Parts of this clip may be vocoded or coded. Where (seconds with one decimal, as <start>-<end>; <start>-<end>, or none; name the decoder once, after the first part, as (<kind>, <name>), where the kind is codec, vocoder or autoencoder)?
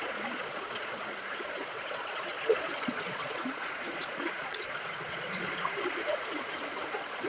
0.0-7.3 (vocoder, Vocos)